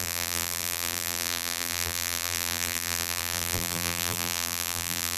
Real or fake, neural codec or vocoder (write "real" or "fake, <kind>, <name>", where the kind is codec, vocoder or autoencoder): fake, vocoder, BigVGAN v2